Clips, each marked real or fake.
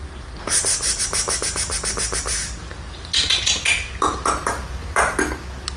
real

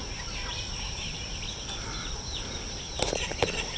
real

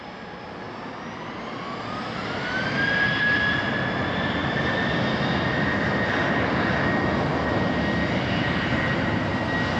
real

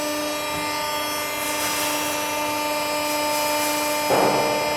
real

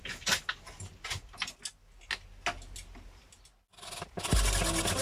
real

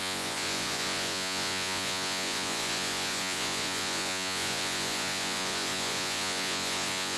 fake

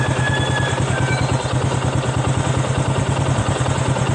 real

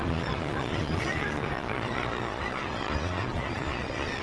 fake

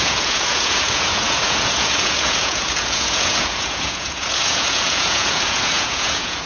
fake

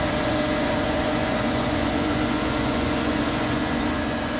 fake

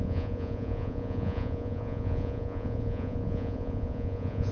fake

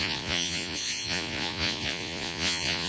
fake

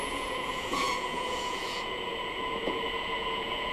fake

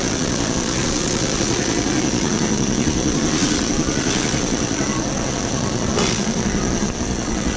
fake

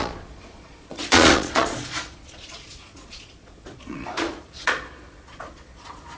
fake